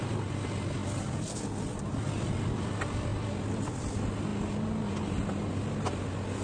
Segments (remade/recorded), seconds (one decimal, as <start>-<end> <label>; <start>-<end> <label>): 0.0-6.4 recorded